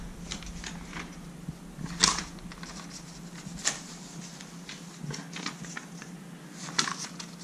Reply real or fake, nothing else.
real